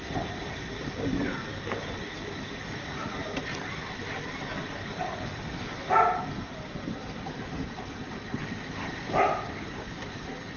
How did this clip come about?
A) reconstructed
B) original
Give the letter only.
A